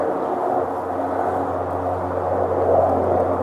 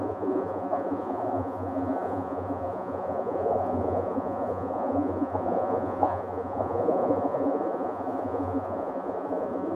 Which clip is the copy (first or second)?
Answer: second